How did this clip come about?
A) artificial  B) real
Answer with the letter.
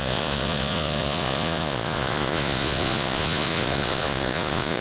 A